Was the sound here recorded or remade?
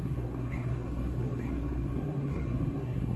remade